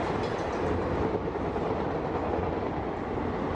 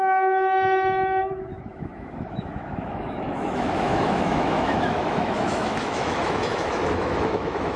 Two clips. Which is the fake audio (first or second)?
second